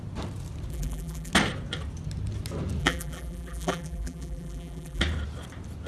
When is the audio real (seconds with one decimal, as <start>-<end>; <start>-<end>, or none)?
0.0-0.7; 1.3-2.8; 5.0-5.9